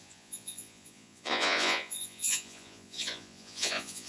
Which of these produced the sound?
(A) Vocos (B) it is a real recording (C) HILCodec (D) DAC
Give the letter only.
A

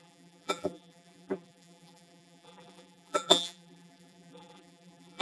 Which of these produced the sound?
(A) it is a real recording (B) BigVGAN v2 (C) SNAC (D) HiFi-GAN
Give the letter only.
B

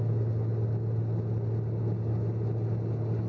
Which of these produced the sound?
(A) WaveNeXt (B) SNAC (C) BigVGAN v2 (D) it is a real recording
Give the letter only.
D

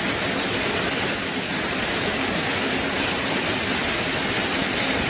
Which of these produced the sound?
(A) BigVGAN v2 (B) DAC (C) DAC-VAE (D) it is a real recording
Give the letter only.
D